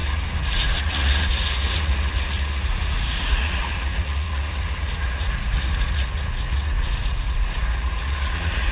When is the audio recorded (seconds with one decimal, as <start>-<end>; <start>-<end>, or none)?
none

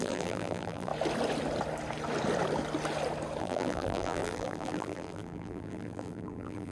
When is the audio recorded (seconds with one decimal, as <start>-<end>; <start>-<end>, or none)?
0.9-3.4

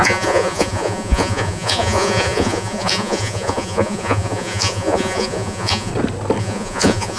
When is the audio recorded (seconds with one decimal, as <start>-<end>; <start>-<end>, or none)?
5.9-6.4

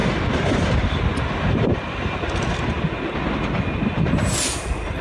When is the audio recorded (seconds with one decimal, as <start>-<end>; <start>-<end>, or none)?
0.0-1.1; 2.5-5.0

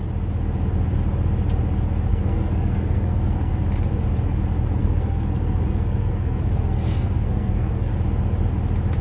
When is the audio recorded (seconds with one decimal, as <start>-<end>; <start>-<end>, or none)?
0.0-2.1; 3.5-4.8; 7.9-9.0

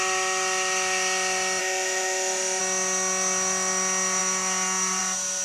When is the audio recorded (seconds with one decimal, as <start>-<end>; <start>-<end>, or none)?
0.0-1.6; 2.6-5.4

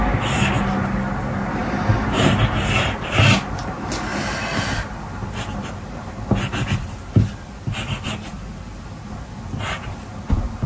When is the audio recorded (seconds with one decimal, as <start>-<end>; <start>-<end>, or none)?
0.0-10.7